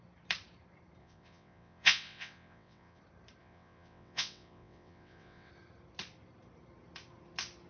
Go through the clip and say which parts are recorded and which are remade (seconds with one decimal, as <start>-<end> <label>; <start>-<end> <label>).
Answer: 0.0-1.0 recorded; 1.0-3.0 remade; 3.0-3.4 recorded; 3.4-5.5 remade; 5.5-7.7 recorded